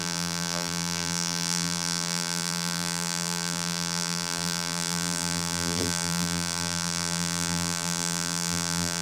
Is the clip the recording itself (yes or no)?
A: no